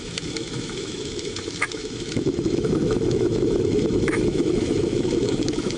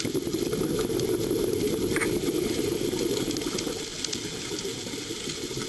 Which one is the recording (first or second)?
second